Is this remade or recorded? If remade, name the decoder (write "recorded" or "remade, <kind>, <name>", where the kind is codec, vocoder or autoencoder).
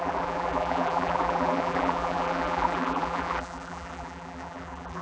remade, vocoder, BigVGAN v2